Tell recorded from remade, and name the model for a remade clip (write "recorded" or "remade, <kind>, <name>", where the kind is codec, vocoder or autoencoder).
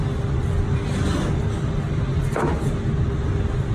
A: recorded